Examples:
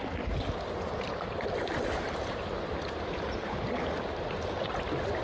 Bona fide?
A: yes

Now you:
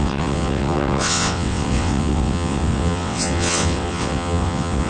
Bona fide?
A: no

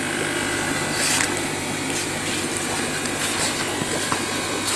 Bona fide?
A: yes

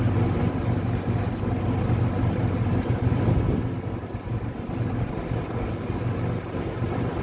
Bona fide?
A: yes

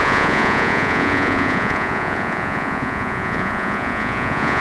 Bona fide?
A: no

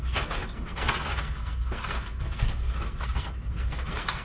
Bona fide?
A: no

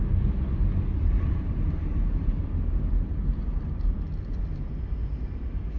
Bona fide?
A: yes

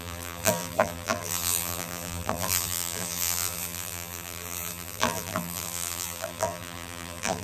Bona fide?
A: no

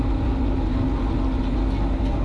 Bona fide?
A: yes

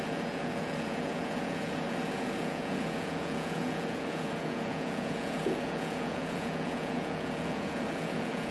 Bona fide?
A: no